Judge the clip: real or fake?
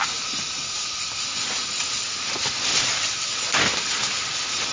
real